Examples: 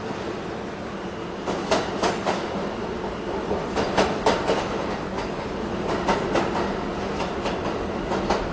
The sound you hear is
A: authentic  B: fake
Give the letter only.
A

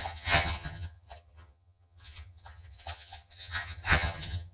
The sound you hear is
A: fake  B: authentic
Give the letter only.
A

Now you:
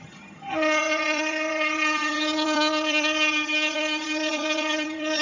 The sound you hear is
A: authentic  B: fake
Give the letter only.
B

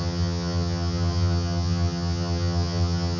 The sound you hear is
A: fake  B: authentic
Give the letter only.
A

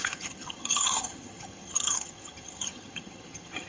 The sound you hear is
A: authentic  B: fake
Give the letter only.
B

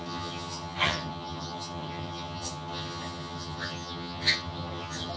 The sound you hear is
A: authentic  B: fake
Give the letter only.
B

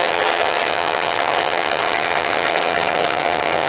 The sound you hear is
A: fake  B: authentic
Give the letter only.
A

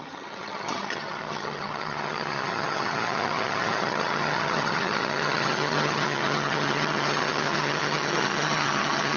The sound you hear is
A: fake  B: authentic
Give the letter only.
A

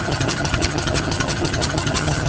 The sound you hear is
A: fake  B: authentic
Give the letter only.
A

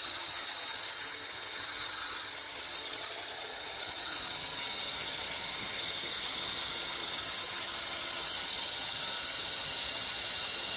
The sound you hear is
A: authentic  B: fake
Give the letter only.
B